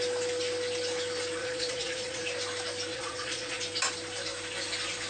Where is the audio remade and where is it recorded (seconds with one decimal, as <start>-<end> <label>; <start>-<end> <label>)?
0.0-1.4 recorded; 1.4-2.2 remade; 2.2-2.9 recorded; 2.9-3.6 remade; 3.6-5.1 recorded